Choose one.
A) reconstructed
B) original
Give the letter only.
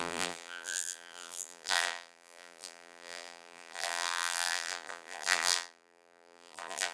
A